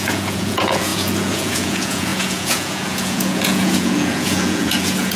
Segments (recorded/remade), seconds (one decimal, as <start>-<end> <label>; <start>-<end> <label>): 0.0-5.2 remade